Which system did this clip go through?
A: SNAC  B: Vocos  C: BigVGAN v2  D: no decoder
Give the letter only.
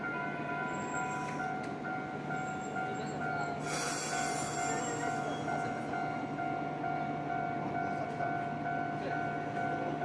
D